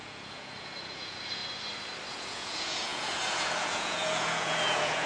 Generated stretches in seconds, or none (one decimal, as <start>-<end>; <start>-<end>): 0.0-1.4; 2.1-5.1